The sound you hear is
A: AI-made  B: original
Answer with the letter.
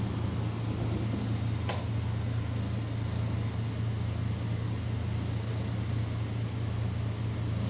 B